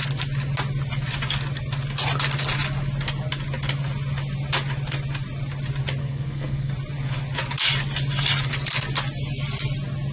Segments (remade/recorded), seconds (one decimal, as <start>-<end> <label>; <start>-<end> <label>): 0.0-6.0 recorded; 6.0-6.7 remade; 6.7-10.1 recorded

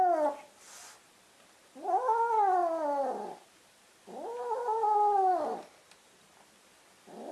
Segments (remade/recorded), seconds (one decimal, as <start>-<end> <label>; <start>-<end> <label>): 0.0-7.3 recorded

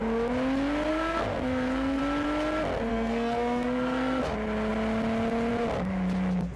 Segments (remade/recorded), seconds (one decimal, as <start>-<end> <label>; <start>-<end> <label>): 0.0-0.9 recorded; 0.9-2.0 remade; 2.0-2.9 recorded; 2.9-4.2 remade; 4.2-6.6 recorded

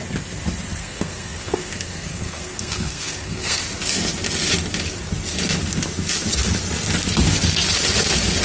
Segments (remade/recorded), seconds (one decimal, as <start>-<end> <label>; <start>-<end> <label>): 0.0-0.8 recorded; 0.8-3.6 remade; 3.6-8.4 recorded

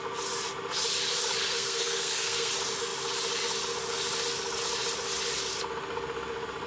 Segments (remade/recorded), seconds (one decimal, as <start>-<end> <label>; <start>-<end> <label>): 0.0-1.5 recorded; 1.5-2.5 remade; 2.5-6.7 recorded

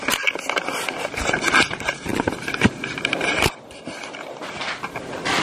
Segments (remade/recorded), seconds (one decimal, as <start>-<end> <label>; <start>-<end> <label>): 0.0-5.4 recorded

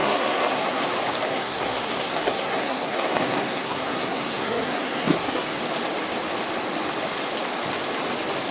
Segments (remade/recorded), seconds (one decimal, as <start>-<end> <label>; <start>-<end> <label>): 0.0-0.8 remade; 0.8-1.3 recorded; 1.3-5.6 remade; 5.6-8.5 recorded